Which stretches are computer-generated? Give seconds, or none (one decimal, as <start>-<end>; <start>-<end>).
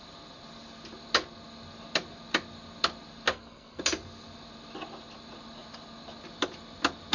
3.3-3.8